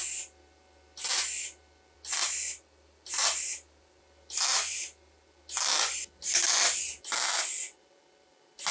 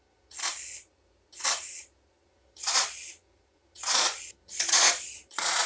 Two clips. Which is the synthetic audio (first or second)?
second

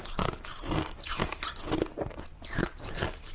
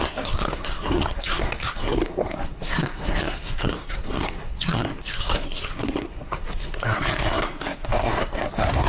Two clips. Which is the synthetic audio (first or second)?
second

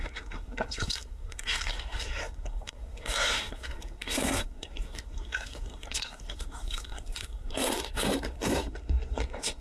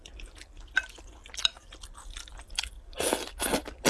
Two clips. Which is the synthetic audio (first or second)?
first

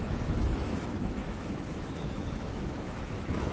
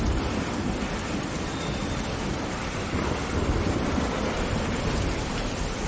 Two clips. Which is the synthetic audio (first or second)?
first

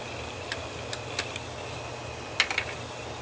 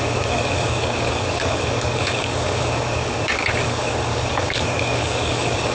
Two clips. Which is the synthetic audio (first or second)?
second